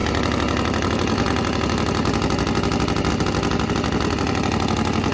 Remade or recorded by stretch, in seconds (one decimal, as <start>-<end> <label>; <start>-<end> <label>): 0.0-5.1 recorded